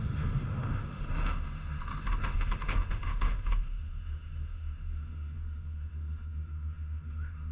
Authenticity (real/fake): fake